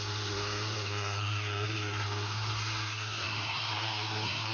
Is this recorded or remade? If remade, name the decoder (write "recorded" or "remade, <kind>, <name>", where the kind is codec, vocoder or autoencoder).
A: remade, codec, SNAC